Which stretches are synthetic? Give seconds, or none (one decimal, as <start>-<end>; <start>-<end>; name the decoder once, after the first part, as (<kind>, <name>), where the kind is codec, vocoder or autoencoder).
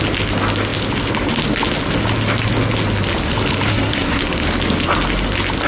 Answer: 3.7-4.2 (codec, SNAC)